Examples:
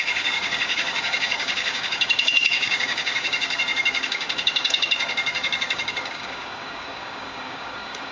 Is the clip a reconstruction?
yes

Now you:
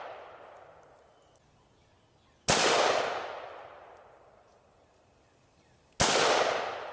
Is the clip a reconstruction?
no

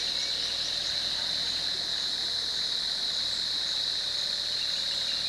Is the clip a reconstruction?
no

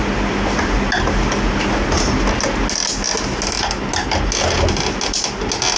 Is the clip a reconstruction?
no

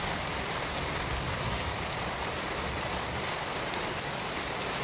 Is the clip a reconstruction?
no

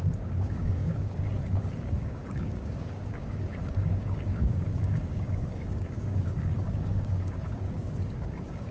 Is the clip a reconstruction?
yes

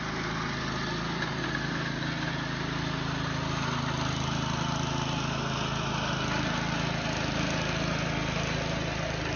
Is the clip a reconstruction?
no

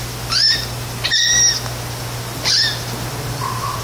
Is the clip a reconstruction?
no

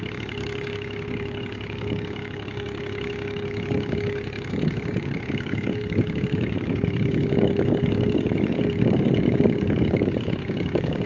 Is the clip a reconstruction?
yes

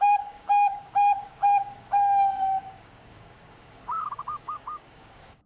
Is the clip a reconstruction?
yes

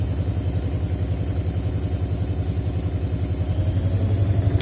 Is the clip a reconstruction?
no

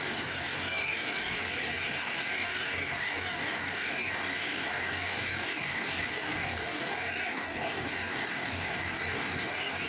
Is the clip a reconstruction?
yes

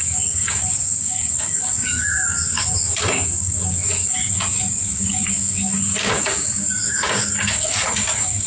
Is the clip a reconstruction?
yes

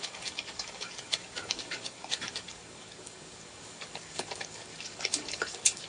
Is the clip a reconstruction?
yes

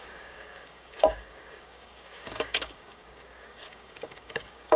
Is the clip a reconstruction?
yes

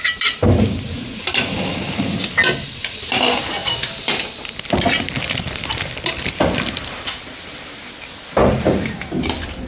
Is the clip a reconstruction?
no